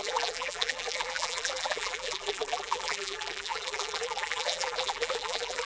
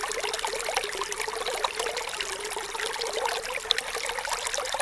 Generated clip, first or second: first